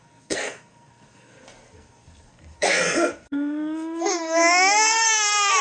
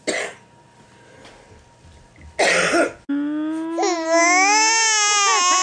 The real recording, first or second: second